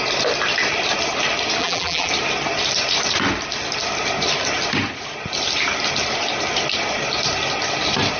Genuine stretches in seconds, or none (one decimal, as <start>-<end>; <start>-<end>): 0.0-1.6; 2.1-8.2